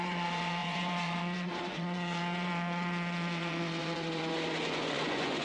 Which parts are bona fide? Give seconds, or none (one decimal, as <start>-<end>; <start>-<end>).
none